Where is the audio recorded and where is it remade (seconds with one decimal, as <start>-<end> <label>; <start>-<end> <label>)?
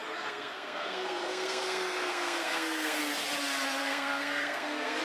0.0-3.0 remade; 3.0-3.8 recorded; 3.8-5.0 remade